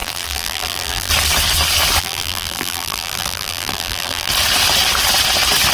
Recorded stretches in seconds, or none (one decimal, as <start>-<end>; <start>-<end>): 1.1-2.0; 4.3-5.7